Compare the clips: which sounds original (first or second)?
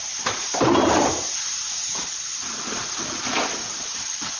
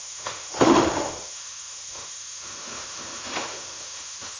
first